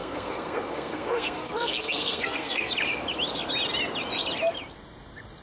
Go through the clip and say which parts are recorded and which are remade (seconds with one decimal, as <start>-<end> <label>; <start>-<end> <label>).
0.0-2.7 remade; 2.7-5.4 recorded